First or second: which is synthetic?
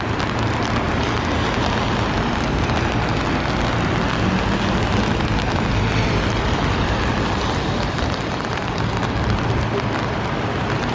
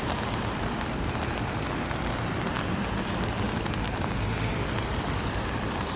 second